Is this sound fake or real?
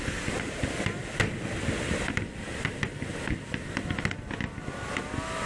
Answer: real